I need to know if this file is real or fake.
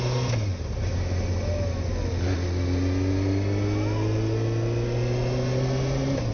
real